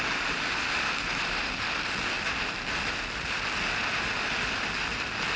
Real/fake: real